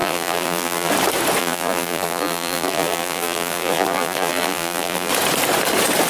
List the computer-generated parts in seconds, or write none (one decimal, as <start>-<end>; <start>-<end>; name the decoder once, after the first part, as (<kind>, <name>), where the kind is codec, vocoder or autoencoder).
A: 0.0-0.9 (vocoder, BigVGAN v2); 1.4-5.1